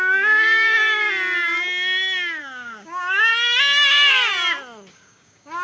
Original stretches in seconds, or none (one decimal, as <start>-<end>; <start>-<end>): 1.0-2.4; 3.3-4.9